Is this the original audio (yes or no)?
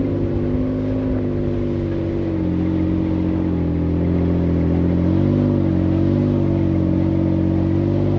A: yes